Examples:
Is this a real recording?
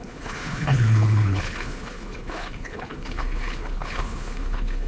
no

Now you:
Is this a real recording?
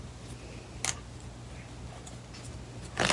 yes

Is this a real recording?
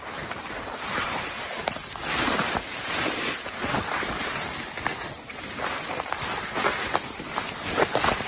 yes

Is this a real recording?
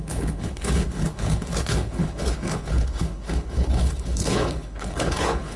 no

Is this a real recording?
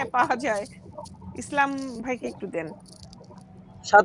yes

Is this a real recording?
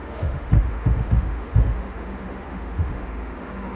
no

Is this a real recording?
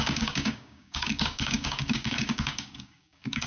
no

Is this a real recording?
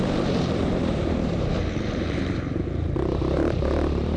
no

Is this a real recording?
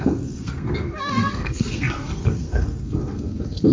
no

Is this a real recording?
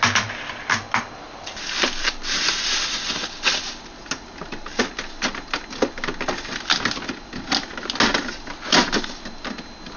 yes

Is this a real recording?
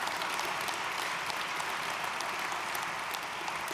yes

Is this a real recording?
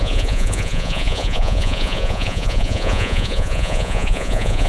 no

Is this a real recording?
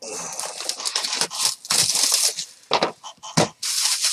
yes